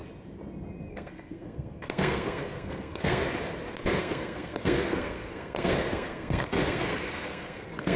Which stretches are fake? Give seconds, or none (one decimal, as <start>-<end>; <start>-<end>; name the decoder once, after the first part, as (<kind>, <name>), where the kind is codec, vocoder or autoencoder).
0.9-3.2 (codec, SNAC); 4.0-8.0